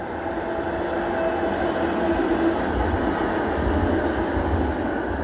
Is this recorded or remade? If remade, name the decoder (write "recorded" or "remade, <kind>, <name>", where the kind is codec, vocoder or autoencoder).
recorded